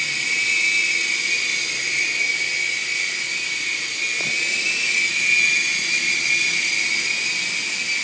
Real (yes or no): yes